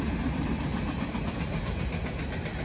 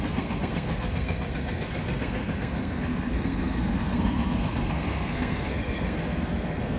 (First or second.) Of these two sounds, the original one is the first